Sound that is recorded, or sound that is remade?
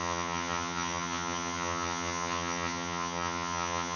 remade